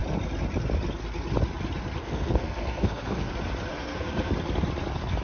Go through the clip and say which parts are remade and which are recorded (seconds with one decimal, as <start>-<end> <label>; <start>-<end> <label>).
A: 0.0-2.0 recorded; 2.0-3.3 remade; 3.3-3.7 recorded; 3.7-4.3 remade; 4.3-5.2 recorded